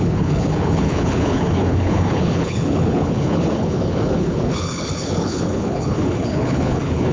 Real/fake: fake